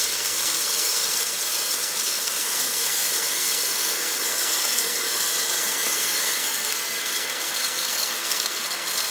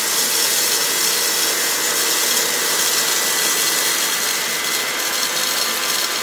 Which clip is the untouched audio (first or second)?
second